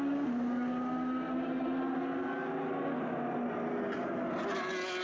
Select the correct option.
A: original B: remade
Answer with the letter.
A